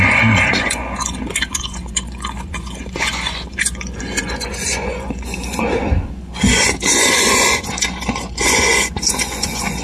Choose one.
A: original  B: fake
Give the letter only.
B